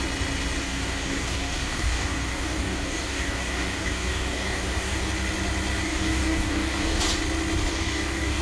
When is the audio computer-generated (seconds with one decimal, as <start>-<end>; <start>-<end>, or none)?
0.6-5.1; 5.7-7.0; 7.7-8.4